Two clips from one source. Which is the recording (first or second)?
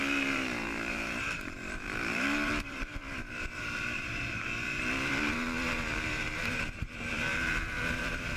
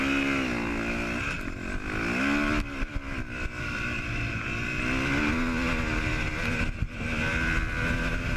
second